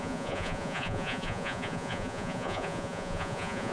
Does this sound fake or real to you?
fake